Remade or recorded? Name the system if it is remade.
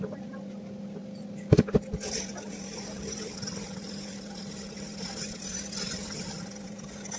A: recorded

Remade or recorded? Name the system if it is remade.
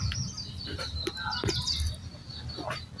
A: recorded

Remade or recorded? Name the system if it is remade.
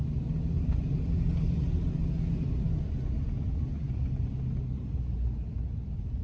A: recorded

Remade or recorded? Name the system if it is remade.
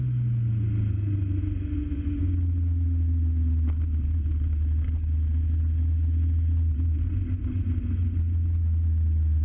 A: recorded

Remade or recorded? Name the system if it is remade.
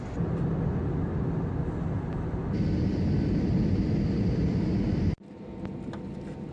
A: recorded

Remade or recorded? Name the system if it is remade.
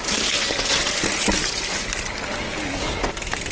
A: recorded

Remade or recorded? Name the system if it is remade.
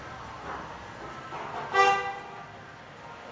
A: recorded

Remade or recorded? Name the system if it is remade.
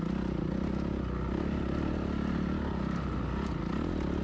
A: recorded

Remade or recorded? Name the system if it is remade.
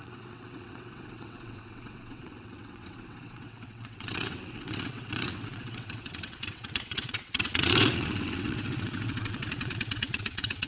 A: remade, vocoder, WaveNeXt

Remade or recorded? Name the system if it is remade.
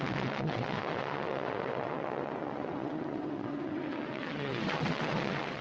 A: remade, vocoder, WaveNeXt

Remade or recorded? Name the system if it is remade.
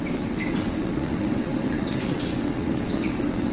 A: remade, vocoder, WaveNeXt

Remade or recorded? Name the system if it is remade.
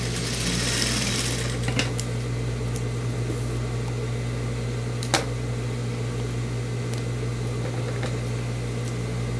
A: recorded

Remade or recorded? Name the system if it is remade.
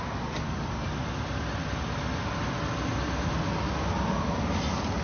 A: recorded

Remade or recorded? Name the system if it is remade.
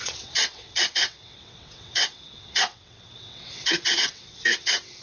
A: remade, vocoder, WaveNeXt